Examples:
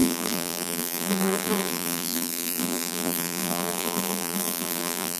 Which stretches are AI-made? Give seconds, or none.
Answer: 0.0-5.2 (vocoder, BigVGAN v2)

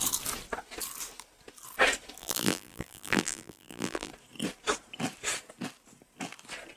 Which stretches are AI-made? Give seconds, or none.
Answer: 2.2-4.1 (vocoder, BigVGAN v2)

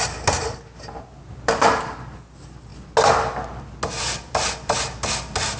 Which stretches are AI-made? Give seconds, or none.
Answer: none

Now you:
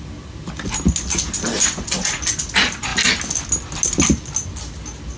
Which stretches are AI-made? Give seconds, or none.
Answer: none

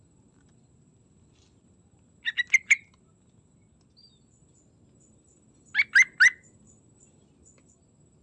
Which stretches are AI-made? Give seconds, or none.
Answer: none

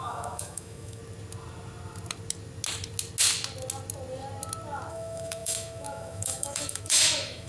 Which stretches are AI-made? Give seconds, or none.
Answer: 0.0-1.0 (autoencoder, DAC-VAE); 4.9-7.5

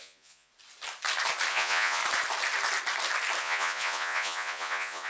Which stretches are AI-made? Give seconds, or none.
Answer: 0.0-0.5 (vocoder, Vocos); 1.5-2.0; 3.4-5.1

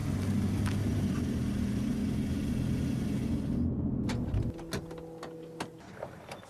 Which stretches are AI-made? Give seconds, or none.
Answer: 0.8-2.0 (vocoder, BigVGAN v2); 5.9-6.5